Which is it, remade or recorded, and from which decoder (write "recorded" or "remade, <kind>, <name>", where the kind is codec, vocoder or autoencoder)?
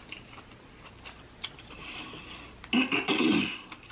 recorded